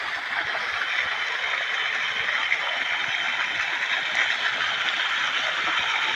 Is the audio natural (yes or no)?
yes